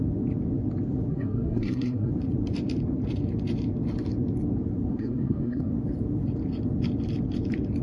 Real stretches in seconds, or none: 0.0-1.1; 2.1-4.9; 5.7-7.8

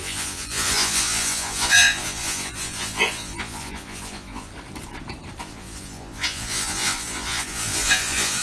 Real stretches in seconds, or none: 4.5-5.4

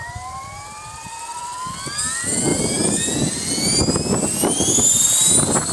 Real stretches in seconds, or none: 1.4-2.5; 3.0-5.7

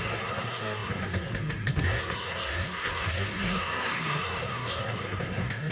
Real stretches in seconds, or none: none

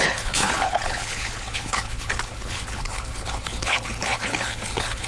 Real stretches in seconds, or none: none